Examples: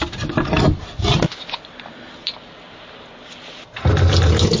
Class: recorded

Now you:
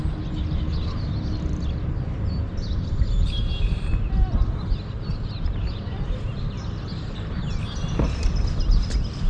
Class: recorded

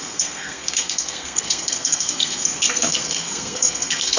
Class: remade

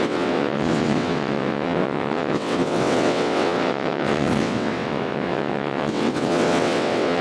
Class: remade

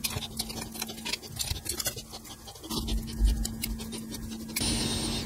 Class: recorded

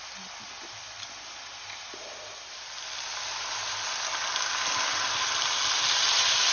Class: recorded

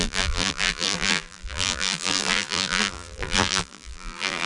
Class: remade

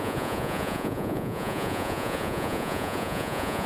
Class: remade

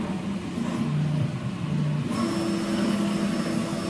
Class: recorded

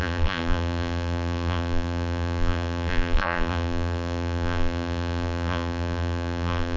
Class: remade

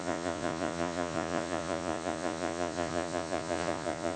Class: remade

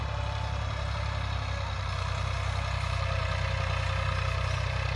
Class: recorded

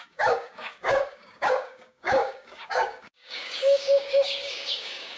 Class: remade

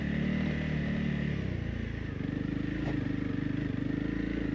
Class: recorded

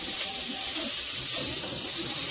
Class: remade